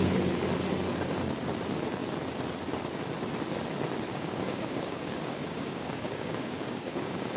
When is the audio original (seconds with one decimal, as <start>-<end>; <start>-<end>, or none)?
0.0-4.1